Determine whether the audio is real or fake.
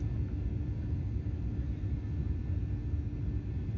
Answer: real